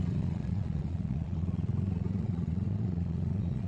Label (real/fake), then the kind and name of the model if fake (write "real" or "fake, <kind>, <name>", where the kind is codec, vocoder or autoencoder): fake, vocoder, Vocos